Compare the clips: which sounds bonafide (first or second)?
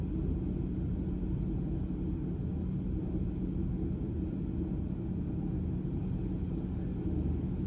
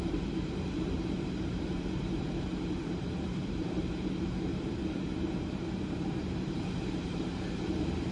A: first